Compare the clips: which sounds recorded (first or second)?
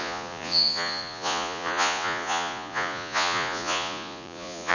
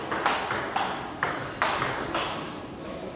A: second